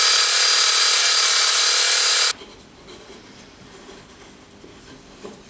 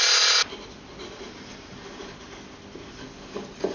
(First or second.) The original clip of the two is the second